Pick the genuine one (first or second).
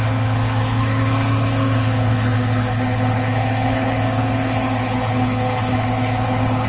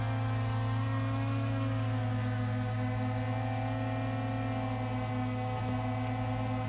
second